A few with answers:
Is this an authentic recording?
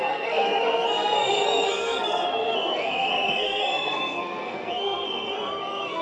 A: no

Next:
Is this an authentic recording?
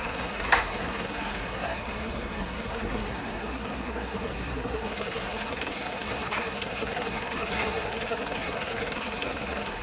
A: no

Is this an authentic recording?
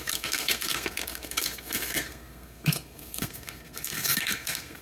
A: no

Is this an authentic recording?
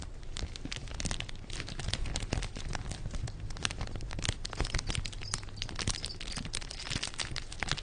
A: yes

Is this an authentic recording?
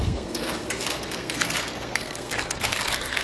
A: no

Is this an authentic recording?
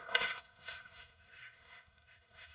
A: no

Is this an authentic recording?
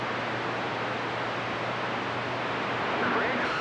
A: yes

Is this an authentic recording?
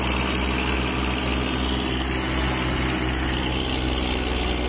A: yes